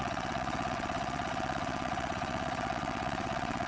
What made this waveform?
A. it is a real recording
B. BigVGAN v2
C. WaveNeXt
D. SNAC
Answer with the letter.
C